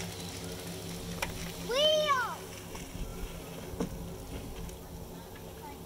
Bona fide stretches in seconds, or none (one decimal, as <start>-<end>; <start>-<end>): 0.0-5.9